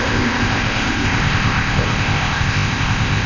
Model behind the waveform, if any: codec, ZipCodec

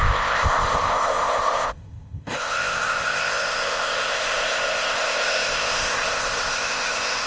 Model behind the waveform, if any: codec, ZipCodec